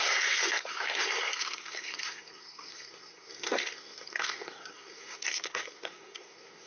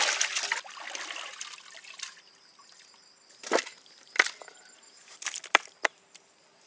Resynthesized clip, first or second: first